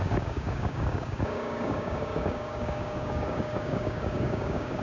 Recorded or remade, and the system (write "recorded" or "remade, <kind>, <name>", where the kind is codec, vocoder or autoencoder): remade, codec, DAC